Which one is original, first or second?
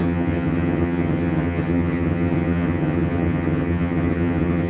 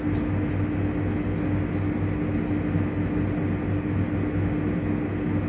second